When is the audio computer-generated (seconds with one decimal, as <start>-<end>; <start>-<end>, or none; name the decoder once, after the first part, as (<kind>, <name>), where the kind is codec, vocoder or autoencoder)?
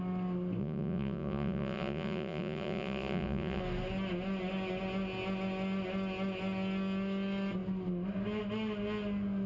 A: 0.6-3.6 (vocoder, Vocos)